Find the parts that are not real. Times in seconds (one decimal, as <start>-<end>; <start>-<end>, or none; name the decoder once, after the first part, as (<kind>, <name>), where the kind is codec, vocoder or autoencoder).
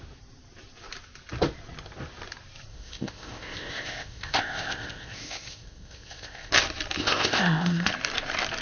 2.7-6.5 (codec, ZipCodec); 7.0-7.9